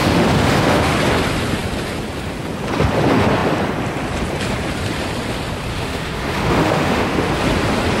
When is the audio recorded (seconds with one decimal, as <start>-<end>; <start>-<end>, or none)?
1.0-5.7; 7.3-8.0